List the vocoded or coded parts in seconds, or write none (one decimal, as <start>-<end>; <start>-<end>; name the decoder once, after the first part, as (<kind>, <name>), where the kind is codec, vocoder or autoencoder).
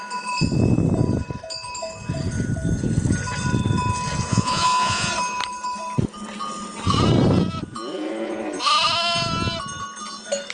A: 4.3-5.1 (vocoder, Vocos)